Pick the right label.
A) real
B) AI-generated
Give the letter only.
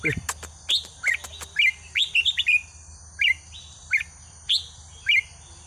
A